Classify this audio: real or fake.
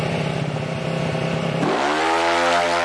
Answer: real